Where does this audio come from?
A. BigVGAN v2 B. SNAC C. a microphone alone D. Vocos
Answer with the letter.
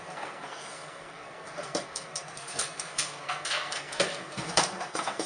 B